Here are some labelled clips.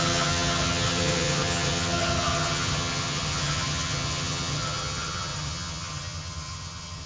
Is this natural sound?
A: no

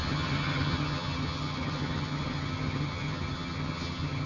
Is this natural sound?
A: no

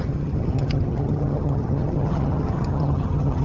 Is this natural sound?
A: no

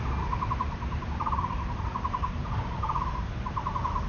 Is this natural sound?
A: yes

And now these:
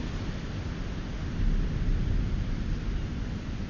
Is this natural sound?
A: yes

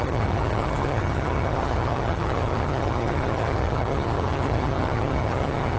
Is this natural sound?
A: no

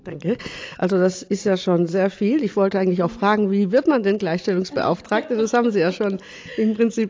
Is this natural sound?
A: yes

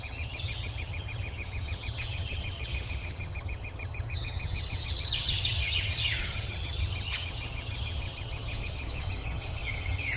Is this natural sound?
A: no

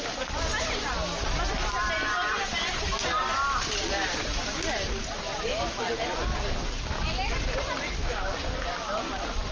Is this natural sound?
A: yes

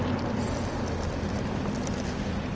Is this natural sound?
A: yes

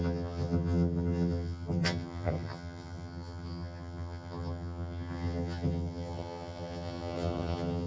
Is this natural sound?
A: no